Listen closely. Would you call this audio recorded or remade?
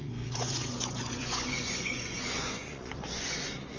remade